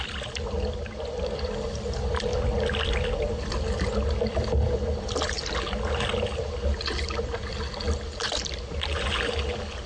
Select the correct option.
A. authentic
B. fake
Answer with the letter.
A